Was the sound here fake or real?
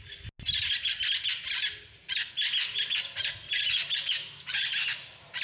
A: real